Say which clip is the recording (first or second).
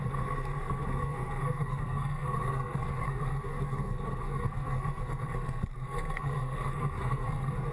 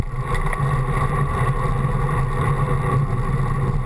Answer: second